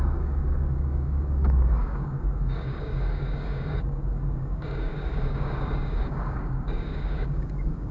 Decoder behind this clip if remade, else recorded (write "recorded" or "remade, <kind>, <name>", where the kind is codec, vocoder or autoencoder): remade, codec, DAC